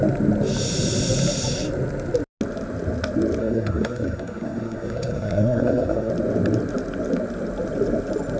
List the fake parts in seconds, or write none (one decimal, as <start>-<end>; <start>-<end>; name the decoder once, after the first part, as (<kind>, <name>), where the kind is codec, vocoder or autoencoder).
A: 3.4-6.1 (codec, SNAC)